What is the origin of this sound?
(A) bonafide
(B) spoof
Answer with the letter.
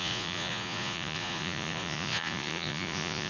B